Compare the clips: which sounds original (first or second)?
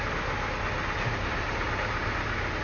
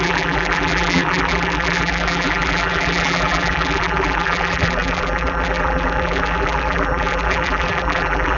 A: first